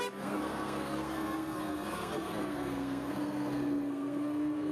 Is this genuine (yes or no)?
no